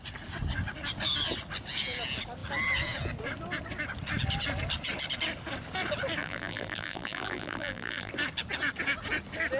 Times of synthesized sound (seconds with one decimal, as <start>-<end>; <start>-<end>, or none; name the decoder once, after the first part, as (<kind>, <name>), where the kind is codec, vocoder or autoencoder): 6.2-8.1 (vocoder, BigVGAN v2)

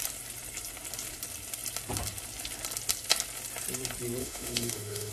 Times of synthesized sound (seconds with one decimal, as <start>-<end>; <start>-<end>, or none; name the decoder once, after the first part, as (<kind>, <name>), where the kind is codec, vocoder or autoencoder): 4.2-5.1 (autoencoder, DAC-VAE)

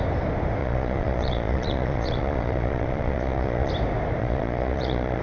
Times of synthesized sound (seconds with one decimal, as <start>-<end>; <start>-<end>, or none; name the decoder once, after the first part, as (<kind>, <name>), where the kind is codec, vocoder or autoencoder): 0.6-3.7 (vocoder, Vocos); 4.2-5.2

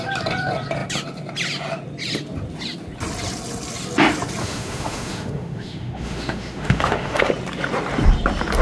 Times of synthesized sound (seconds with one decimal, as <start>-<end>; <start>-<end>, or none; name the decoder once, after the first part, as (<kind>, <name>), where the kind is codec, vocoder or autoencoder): 4.4-7.3 (autoencoder, DAC-VAE)

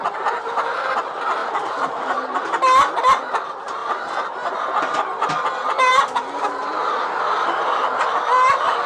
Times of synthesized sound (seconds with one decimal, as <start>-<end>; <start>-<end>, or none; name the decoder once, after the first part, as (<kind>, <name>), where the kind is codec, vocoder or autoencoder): 1.4-2.4 (vocoder, BigVGAN v2)

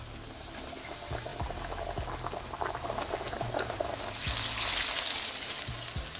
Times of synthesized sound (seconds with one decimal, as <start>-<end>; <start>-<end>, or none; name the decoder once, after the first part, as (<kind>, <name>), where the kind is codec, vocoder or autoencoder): none

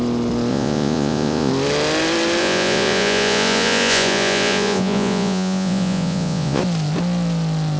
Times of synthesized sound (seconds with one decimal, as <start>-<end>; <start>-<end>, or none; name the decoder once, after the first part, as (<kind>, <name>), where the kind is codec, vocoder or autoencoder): 0.5-1.5 (vocoder, Vocos); 2.4-6.6

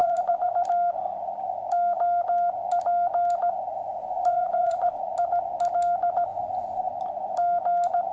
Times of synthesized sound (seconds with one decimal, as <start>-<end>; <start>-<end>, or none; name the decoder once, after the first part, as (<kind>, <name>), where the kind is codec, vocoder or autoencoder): 0.0-0.5 (vocoder, Vocos); 4.0-5.0; 6.3-6.9